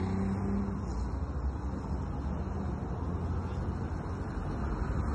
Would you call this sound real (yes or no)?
yes